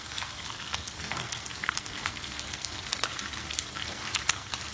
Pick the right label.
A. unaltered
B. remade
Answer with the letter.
B